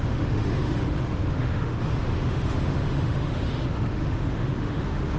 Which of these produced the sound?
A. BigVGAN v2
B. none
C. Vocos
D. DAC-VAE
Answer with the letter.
D